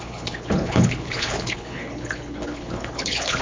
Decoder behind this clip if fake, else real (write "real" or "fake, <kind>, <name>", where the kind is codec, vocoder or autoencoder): fake, codec, HILCodec